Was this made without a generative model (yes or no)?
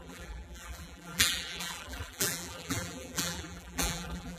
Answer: no